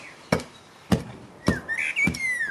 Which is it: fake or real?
real